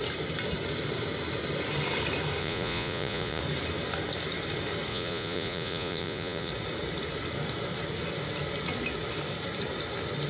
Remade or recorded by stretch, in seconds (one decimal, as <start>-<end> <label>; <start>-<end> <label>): 0.0-2.4 recorded; 2.4-3.4 remade; 3.4-4.9 recorded; 4.9-6.5 remade; 6.5-10.3 recorded